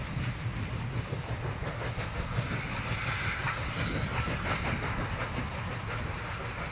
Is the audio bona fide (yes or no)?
yes